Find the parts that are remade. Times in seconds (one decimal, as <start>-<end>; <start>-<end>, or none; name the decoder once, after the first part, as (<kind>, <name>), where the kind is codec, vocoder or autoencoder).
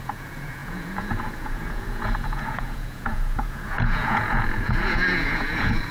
0.0-5.9 (vocoder, Vocos)